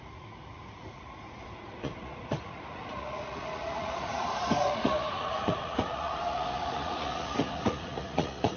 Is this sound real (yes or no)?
no